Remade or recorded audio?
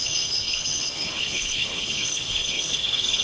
remade